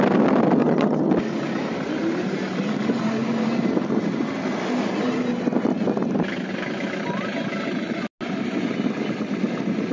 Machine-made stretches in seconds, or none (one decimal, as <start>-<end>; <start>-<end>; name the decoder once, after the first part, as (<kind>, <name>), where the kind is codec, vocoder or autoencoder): 0.6-1.1 (vocoder, HiFi-GAN)